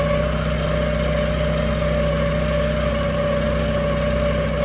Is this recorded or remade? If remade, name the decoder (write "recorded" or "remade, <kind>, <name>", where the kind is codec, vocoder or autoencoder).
recorded